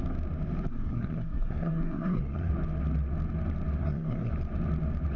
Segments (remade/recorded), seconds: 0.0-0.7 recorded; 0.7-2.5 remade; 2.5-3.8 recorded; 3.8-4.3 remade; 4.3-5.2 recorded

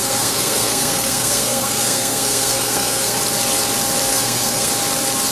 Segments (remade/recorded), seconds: 0.0-3.2 remade; 3.2-4.1 recorded; 4.1-4.7 remade; 4.7-5.3 recorded